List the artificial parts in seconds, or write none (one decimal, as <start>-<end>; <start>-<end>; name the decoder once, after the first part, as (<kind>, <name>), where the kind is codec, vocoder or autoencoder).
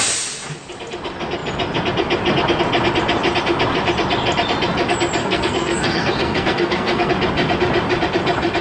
5.2-7.1 (codec, SNAC)